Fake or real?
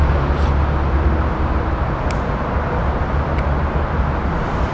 real